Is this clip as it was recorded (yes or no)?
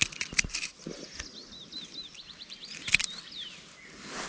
yes